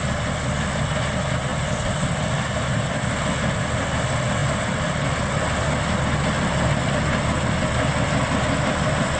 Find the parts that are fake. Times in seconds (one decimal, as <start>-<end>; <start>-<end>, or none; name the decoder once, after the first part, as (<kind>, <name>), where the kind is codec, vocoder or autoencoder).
none